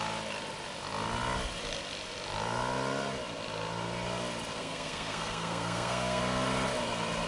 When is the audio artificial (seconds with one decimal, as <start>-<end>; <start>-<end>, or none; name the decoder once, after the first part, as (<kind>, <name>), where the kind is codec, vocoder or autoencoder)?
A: 4.6-6.2 (codec, SNAC)